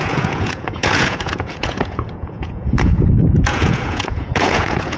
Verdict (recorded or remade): remade